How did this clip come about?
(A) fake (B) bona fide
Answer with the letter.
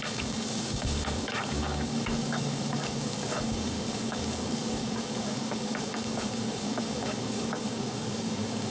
A